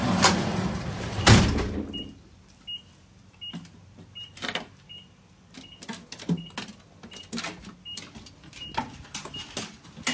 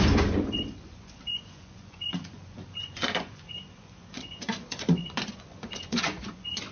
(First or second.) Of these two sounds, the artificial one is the second